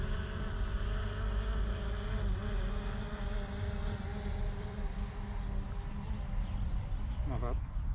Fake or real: real